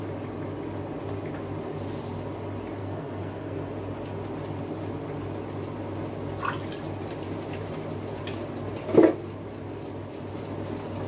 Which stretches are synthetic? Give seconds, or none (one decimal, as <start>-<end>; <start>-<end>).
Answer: 2.8-3.7